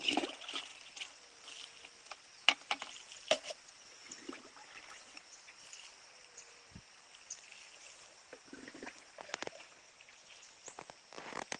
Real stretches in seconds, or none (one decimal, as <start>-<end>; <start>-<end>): 0.0-11.6